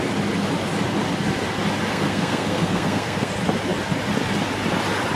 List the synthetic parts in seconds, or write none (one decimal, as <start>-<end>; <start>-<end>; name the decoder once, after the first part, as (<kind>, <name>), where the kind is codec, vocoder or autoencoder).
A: 1.9-3.3 (codec, SNAC)